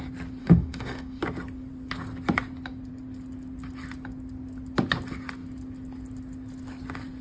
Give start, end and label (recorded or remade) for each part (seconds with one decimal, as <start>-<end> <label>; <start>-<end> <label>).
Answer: 0.0-0.4 recorded; 0.4-1.2 remade; 1.2-7.2 recorded

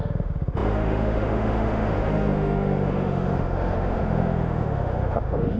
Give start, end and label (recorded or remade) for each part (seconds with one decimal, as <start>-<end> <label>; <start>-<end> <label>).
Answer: 0.0-5.6 remade